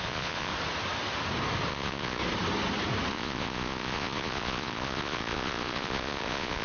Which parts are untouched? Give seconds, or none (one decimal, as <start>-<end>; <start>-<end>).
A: 0.5-1.7; 2.2-3.1